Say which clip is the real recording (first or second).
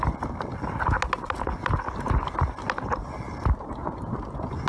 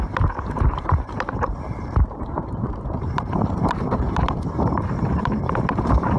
first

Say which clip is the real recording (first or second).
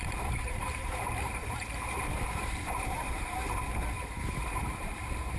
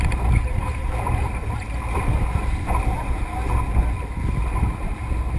second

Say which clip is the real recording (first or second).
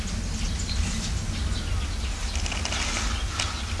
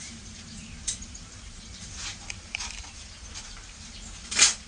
first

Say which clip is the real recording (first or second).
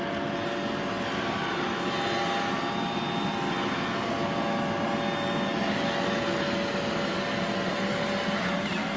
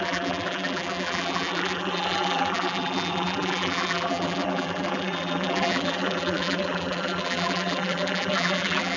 first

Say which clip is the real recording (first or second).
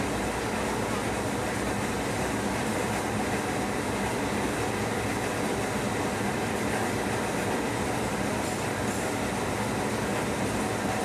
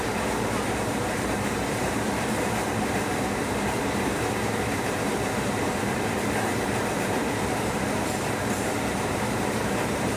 first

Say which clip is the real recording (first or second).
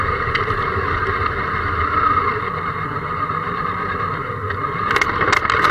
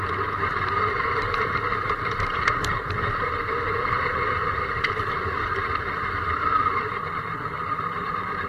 first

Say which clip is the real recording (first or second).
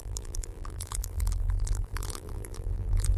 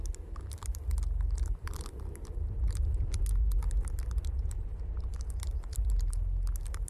second